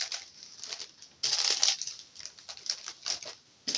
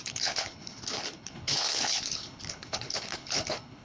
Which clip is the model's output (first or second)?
second